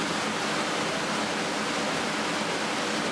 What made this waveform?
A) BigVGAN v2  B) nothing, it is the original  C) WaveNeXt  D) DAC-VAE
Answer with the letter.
B